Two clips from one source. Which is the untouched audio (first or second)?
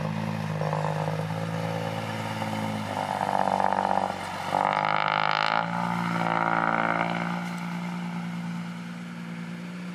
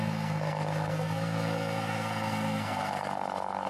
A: first